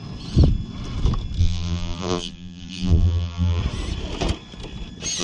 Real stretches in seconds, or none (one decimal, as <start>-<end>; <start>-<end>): 0.0-1.4; 3.6-5.2